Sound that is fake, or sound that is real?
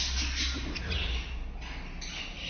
real